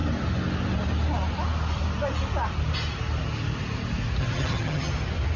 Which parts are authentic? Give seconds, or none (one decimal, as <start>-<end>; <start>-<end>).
0.0-4.2; 4.9-5.4